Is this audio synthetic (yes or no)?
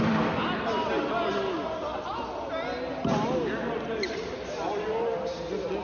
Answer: no